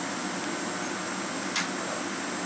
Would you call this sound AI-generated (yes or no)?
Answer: no